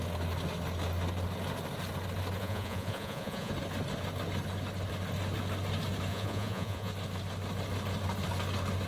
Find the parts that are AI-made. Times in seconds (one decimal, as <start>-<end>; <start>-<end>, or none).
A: 2.4-3.5; 6.1-6.9